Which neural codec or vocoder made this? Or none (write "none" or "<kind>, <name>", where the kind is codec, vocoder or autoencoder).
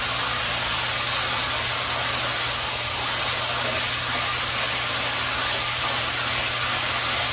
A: none